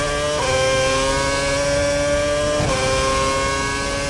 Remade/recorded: recorded